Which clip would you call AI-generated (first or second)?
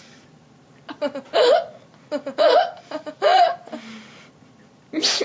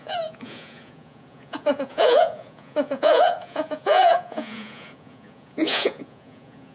second